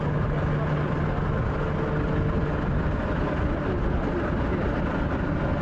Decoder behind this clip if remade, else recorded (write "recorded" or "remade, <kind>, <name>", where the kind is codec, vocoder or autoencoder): recorded